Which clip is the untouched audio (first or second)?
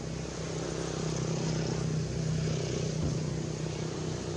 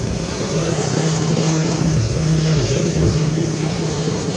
first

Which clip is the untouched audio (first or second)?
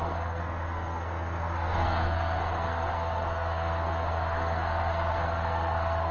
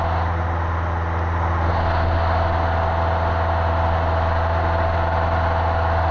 second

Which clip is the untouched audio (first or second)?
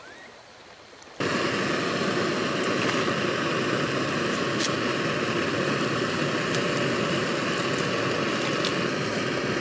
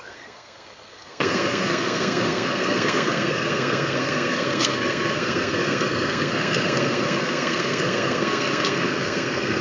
first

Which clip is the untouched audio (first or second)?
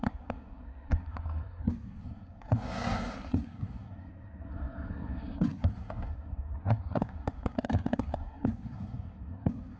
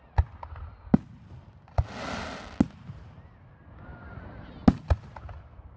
second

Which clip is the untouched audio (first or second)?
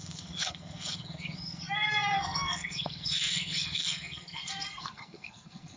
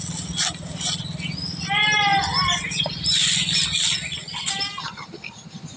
second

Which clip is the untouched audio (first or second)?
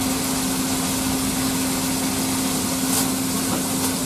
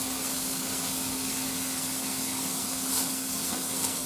first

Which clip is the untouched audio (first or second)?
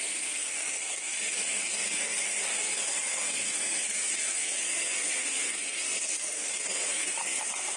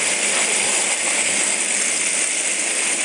second